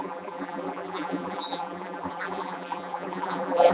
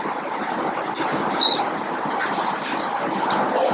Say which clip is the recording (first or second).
second